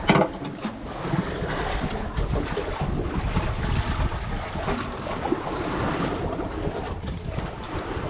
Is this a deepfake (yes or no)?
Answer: no